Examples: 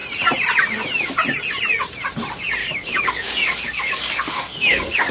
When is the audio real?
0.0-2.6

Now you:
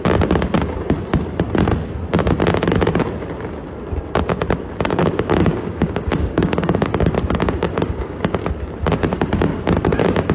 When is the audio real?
0.0-4.9; 8.4-9.5

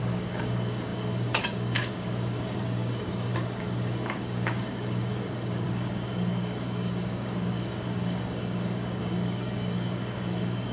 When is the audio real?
none